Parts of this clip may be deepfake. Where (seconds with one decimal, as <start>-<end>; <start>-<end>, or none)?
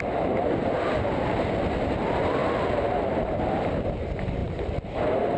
none